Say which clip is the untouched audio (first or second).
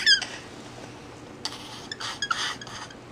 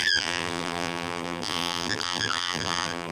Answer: first